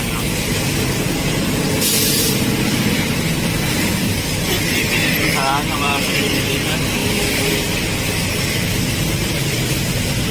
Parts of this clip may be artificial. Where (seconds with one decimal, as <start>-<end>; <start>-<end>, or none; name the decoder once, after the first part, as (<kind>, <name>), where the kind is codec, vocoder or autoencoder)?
0.0-7.0 (vocoder, BigVGAN v2); 8.8-10.3